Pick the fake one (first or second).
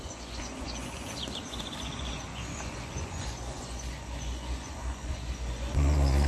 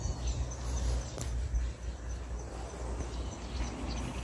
first